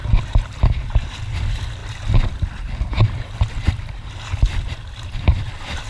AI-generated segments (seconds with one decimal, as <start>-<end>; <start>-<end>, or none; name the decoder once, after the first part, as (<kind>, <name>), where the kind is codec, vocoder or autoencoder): none

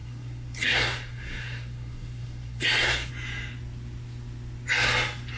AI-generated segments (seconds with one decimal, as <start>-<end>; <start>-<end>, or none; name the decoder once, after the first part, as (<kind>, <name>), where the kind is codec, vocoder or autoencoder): 0.0-3.1 (codec, SNAC)

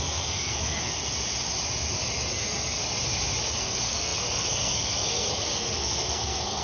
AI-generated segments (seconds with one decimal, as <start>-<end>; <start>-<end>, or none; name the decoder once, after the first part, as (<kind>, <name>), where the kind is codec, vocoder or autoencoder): 0.0-0.9 (codec, SNAC); 2.3-2.8; 3.4-6.6

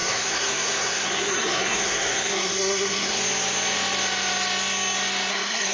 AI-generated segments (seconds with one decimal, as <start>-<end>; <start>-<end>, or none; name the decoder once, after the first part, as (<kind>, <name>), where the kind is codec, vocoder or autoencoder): 0.0-3.2 (codec, SNAC); 5.3-5.7